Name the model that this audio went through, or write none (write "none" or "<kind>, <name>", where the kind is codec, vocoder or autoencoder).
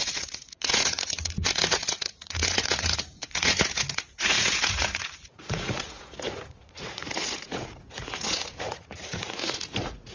vocoder, Vocos